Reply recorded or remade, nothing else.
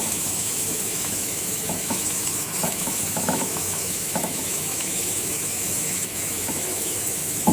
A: remade